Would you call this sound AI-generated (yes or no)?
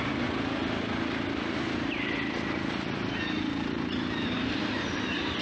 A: no